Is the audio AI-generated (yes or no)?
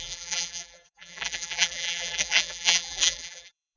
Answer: yes